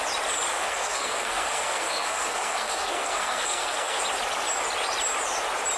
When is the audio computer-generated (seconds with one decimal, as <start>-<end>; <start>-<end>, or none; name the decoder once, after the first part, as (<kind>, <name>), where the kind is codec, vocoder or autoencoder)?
0.5-4.0 (codec, SNAC)